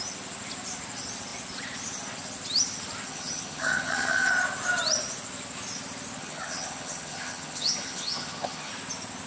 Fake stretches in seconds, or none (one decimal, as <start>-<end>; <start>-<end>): 3.1-4.3; 6.2-8.7